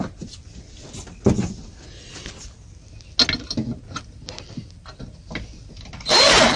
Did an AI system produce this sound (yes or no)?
no